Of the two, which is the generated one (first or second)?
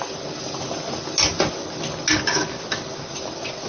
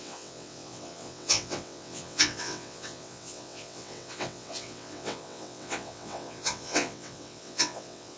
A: second